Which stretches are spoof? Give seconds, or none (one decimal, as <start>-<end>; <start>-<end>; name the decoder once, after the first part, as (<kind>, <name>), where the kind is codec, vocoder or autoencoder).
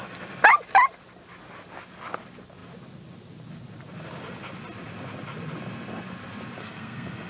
6.6-7.3 (codec, SNAC)